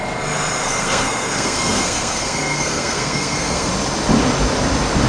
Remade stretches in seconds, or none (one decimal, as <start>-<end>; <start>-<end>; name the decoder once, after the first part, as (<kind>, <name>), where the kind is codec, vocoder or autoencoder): 0.6-3.7 (codec, SNAC)